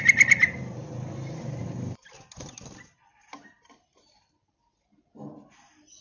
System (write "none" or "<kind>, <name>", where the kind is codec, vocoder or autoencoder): none